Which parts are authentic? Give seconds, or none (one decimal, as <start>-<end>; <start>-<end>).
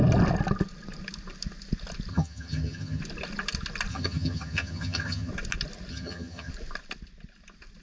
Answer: 0.0-2.1; 3.0-3.9; 5.3-5.9; 6.5-7.8